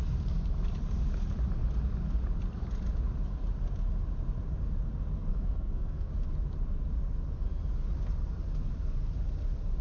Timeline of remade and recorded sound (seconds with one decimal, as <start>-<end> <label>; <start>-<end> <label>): 0.0-5.3 recorded; 5.3-6.1 remade; 6.1-9.8 recorded